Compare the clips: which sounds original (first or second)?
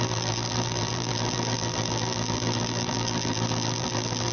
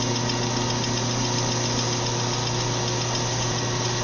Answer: second